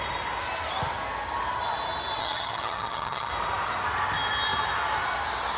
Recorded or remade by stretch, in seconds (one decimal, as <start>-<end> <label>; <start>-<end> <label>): 0.0-2.2 recorded; 2.2-3.3 remade; 3.3-5.6 recorded